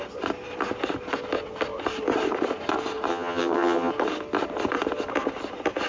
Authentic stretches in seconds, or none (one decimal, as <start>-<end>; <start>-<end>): 0.0-3.1; 3.9-5.9